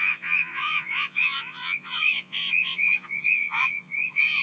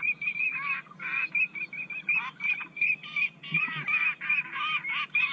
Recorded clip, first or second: second